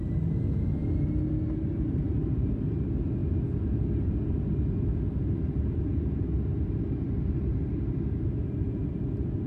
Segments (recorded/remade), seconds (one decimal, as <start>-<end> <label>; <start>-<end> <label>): 0.0-0.8 remade; 0.8-1.7 recorded; 1.7-3.2 remade; 3.2-5.2 recorded; 5.2-9.5 remade